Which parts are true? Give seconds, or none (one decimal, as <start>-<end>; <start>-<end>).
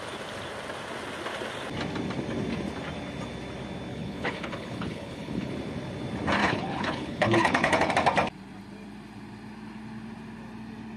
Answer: 0.0-3.9; 5.5-6.4; 7.9-11.0